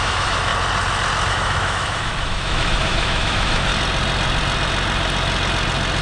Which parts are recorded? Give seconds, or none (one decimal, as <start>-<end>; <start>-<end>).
0.5-1.3; 3.7-6.0